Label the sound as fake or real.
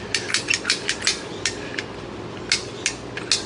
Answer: real